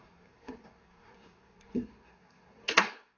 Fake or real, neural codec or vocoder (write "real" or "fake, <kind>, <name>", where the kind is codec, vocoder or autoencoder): fake, codec, SNAC